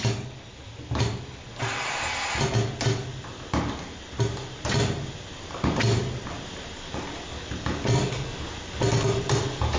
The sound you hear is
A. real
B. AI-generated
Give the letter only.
A